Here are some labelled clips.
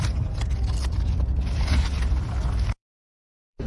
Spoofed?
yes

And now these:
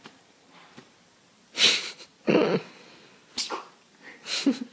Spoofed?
no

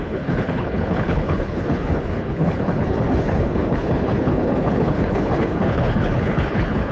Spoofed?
yes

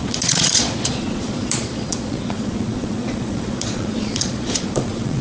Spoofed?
yes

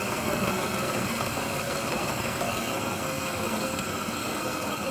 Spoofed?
yes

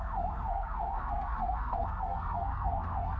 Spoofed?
yes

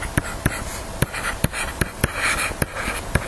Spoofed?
no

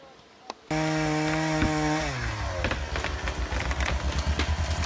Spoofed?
no